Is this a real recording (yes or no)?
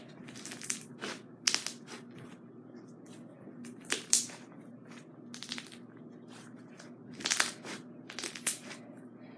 yes